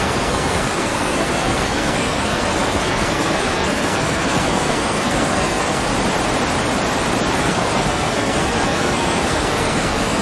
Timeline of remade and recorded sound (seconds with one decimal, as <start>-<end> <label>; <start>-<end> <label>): 0.0-5.9 remade; 5.9-7.4 recorded; 7.4-10.2 remade